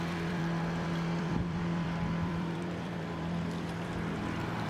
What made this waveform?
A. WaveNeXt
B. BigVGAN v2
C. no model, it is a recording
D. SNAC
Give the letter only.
B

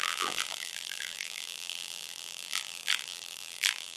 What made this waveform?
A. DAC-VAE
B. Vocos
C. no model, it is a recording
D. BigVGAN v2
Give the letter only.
D